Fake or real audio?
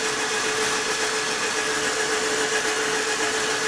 real